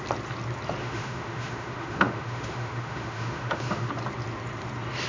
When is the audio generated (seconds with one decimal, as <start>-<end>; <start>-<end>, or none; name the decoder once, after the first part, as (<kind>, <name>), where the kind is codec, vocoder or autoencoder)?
0.8-3.9 (autoencoder, DAC-VAE)